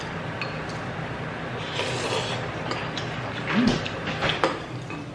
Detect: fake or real real